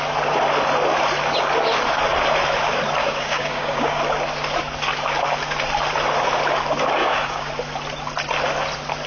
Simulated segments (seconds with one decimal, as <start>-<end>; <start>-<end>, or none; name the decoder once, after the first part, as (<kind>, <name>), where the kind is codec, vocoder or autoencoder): 3.0-4.0 (codec, DAC); 7.0-7.5